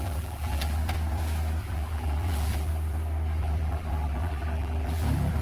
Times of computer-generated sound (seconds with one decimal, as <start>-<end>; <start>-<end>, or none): 0.0-0.8; 1.6-2.7; 3.4-5.4